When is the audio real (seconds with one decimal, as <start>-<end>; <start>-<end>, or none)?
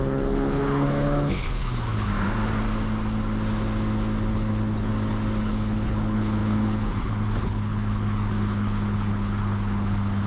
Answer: 2.1-4.3; 4.9-5.4